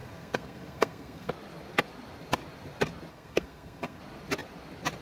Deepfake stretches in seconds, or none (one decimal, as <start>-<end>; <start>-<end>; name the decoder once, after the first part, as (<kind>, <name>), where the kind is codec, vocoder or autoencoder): 0.0-1.3 (codec, SNAC); 3.1-4.0